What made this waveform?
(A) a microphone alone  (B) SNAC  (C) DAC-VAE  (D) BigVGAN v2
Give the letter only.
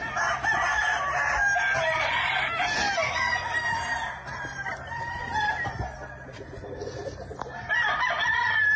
A